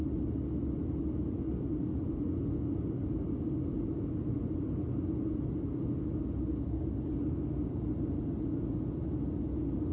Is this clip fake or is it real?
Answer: real